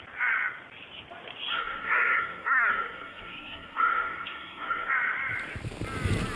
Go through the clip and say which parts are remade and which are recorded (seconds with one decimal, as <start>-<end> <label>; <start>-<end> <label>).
0.0-1.5 recorded; 1.5-4.9 remade; 4.9-6.4 recorded

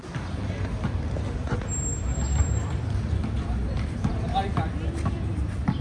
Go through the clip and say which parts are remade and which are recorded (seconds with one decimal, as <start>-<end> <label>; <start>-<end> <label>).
0.0-1.9 recorded; 1.9-4.1 remade; 4.1-5.8 recorded

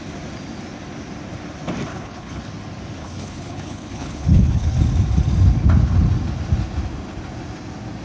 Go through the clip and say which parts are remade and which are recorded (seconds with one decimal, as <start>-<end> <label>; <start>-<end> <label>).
0.0-1.9 recorded; 1.9-2.4 remade; 2.4-3.0 recorded; 3.0-4.8 remade; 4.8-8.0 recorded

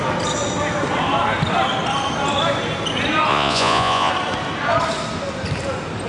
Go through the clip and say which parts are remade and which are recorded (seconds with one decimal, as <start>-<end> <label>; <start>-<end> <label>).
0.0-3.3 recorded; 3.3-4.1 remade; 4.1-6.1 recorded

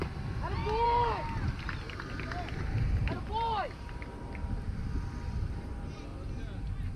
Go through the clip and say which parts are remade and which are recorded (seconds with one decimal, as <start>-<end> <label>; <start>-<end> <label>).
0.0-0.6 remade; 0.6-2.6 recorded; 2.6-4.8 remade; 4.8-5.3 recorded; 5.3-6.1 remade; 6.1-7.0 recorded

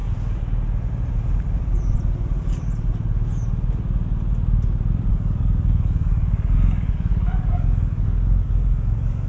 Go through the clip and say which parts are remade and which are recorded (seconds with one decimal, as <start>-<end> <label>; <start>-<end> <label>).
0.0-5.1 recorded; 5.1-9.3 remade